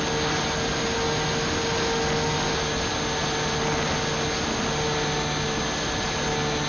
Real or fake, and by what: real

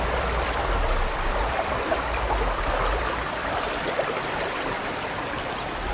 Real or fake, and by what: fake, vocoder, BigVGAN v2